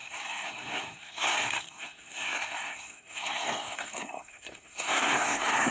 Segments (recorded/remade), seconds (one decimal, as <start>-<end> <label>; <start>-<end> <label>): 0.0-5.7 remade